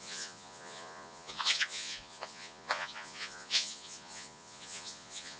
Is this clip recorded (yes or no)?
no